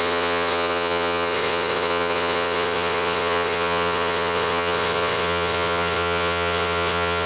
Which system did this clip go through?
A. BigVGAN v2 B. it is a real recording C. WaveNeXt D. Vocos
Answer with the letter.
C